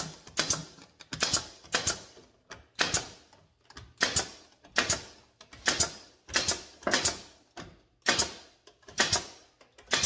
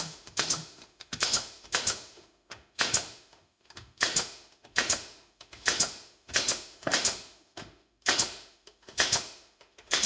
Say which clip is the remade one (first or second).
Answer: second